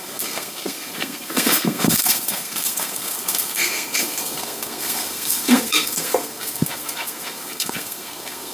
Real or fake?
fake